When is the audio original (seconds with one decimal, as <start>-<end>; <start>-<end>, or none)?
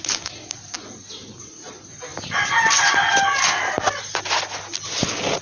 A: 0.0-5.4